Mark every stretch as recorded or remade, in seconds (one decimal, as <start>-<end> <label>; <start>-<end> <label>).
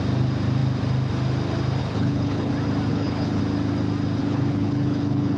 0.0-1.8 recorded; 1.8-2.5 remade; 2.5-2.9 recorded; 2.9-3.4 remade; 3.4-4.2 recorded; 4.2-5.4 remade